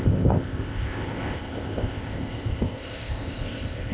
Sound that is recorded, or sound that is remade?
remade